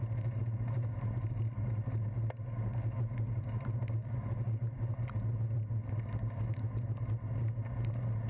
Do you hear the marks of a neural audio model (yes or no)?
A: no